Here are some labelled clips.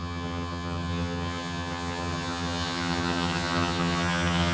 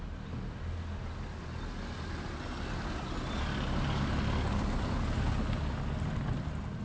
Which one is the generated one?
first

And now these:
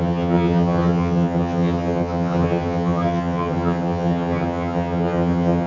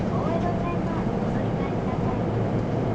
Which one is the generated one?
first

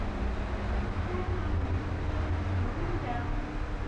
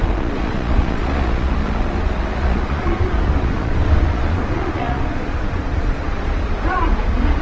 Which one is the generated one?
second